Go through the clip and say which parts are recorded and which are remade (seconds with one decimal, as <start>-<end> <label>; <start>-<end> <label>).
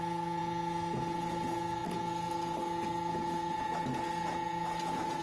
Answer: 0.0-5.2 recorded